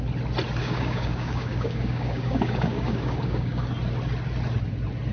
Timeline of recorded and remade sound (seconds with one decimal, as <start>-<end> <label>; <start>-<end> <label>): 0.0-0.6 recorded; 0.6-3.7 remade; 3.7-5.1 recorded

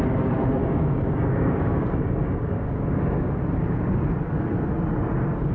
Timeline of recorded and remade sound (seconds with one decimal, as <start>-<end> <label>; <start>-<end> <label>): 0.0-0.6 recorded; 0.6-3.4 remade; 3.4-5.5 recorded

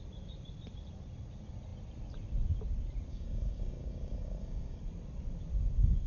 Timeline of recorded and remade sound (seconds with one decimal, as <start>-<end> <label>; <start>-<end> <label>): 0.0-3.1 recorded; 3.1-4.8 remade; 4.8-6.1 recorded

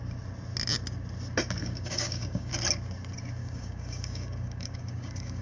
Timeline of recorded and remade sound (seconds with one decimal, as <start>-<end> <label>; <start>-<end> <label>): 0.0-1.6 recorded; 1.6-2.5 remade; 2.5-3.4 recorded; 3.4-5.4 remade

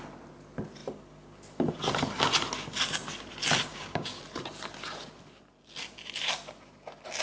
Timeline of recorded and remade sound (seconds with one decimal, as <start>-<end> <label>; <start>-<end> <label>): 0.0-3.7 recorded; 3.7-4.2 remade; 4.2-7.2 recorded